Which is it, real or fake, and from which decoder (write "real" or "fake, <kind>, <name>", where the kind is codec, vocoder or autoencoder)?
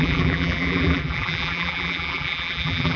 fake, vocoder, BigVGAN v2